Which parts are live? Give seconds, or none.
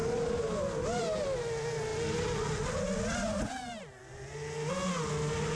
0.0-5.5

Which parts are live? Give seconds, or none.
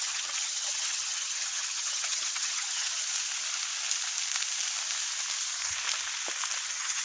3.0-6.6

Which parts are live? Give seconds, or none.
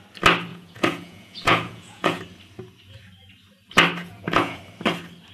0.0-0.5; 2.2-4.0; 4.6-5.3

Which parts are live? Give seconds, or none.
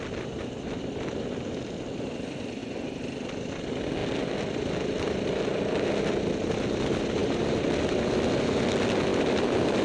0.0-9.8